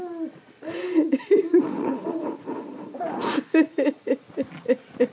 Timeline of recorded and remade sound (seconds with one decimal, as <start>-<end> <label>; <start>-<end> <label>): 0.0-1.2 recorded; 1.2-4.3 remade; 4.3-5.1 recorded